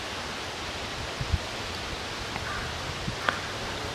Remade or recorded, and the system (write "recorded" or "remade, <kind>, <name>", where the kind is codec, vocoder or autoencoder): recorded